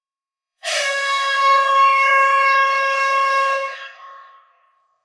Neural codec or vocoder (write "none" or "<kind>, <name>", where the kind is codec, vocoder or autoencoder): codec, DAC